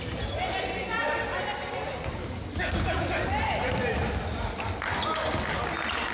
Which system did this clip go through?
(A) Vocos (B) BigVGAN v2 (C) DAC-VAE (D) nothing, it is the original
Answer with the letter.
D